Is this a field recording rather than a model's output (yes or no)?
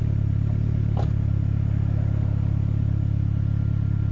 yes